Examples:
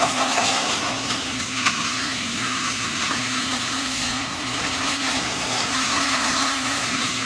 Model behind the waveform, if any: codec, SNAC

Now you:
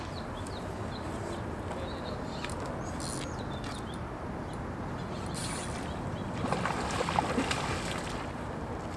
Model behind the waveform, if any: none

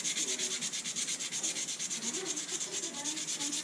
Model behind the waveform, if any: none